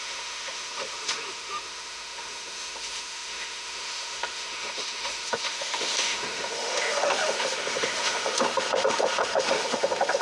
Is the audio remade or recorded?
remade